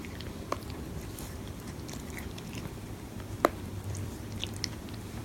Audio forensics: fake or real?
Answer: fake